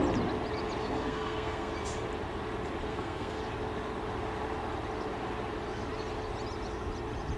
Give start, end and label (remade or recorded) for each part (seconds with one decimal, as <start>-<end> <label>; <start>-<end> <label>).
0.0-0.8 recorded; 0.8-1.7 remade; 1.7-2.9 recorded; 2.9-3.4 remade; 3.4-7.4 recorded